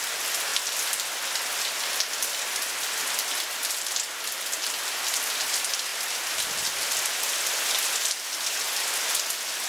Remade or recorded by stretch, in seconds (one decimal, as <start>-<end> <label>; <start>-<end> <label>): 0.0-9.7 recorded